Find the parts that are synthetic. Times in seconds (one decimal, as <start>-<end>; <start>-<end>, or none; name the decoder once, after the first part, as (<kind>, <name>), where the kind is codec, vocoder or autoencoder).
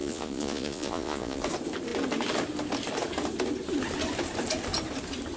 0.0-1.4 (vocoder, Vocos)